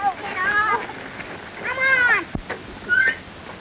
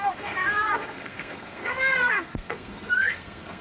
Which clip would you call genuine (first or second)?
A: first